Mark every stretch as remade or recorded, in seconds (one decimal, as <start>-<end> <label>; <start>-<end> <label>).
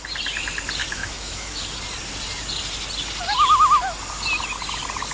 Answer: 0.0-0.8 recorded; 0.8-1.6 remade; 1.6-5.1 recorded